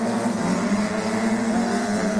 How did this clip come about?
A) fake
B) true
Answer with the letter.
B